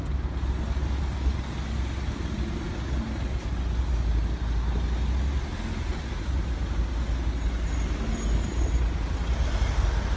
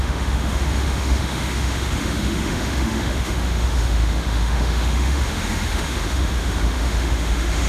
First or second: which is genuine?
first